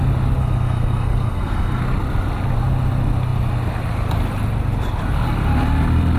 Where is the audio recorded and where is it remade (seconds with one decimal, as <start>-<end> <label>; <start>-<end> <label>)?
0.0-0.4 recorded; 0.4-1.8 remade; 1.8-6.2 recorded